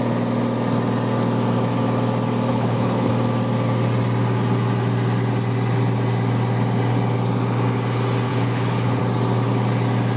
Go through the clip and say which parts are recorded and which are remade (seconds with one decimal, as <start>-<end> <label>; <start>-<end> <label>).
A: 0.0-2.5 recorded; 2.5-3.1 remade; 3.1-8.3 recorded; 8.3-9.0 remade; 9.0-10.2 recorded